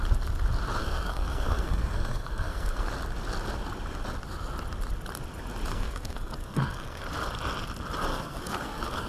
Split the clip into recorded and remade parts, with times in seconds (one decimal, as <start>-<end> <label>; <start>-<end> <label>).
0.0-0.8 recorded; 0.8-2.9 remade; 2.9-5.7 recorded; 5.7-7.0 remade; 7.0-8.1 recorded; 8.1-9.1 remade